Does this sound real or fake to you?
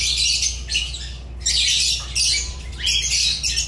real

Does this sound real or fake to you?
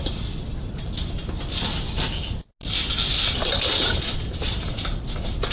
real